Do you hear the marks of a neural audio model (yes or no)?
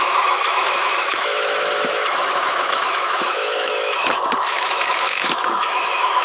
yes